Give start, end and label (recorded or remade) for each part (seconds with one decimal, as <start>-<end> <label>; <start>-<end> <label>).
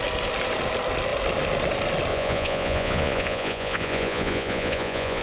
0.0-2.1 recorded; 2.1-5.2 remade